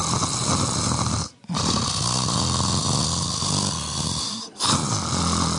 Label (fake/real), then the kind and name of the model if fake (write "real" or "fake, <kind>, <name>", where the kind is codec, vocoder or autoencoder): real